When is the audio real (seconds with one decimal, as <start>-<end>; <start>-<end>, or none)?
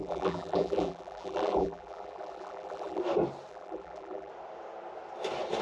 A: 3.0-3.5; 4.3-5.6